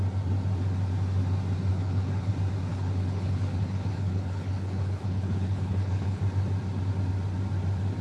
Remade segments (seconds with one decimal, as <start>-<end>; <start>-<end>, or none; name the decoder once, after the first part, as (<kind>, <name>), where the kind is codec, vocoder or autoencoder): 1.7-2.3 (codec, HILCodec); 2.7-6.2